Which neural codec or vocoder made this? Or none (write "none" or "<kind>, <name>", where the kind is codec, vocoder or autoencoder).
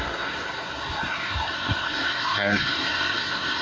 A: codec, SNAC